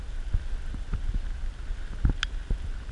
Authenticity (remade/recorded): recorded